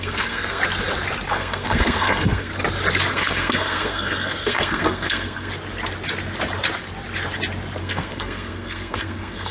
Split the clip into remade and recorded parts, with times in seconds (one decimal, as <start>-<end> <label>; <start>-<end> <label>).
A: 0.0-0.6 remade; 0.6-1.3 recorded; 1.3-2.5 remade; 2.5-3.1 recorded; 3.1-5.5 remade; 5.5-7.8 recorded; 7.8-9.5 remade